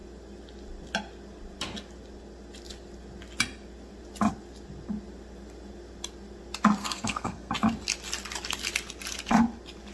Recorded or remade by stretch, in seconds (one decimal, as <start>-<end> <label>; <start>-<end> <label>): 0.0-6.8 recorded; 6.8-7.5 remade; 7.5-9.9 recorded